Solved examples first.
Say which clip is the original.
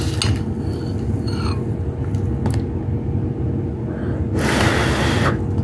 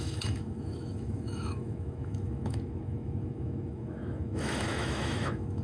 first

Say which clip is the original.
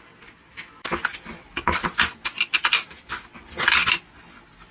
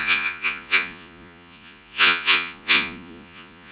first